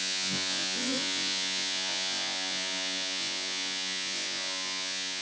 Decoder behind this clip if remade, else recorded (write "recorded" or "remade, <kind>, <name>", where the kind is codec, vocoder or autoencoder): remade, vocoder, Vocos